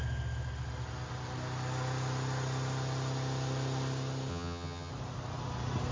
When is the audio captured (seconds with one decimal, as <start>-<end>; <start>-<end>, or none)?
0.0-4.3; 4.9-5.9